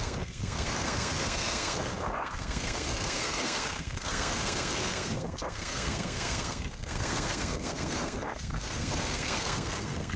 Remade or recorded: remade